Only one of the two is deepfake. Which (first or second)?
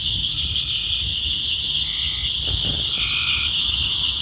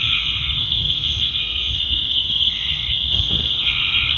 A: second